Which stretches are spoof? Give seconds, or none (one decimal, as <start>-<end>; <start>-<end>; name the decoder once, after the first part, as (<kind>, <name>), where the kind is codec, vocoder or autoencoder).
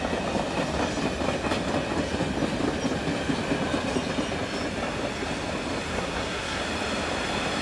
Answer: 5.9-6.6 (codec, SNAC)